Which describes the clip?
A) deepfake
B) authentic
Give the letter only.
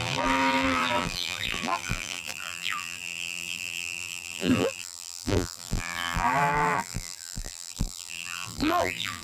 A